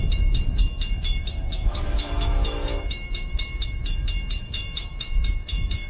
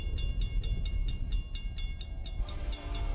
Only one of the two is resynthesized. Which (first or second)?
first